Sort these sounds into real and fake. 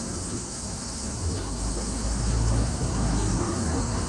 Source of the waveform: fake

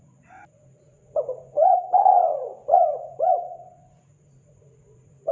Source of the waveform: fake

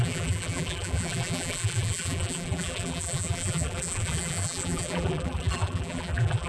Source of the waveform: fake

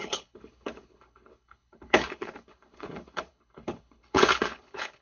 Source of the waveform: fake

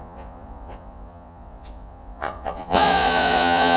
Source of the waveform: fake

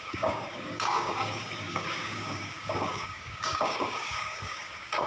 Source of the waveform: fake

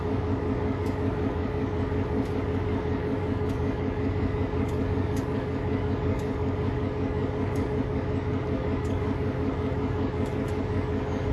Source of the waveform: fake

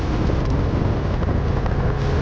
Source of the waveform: real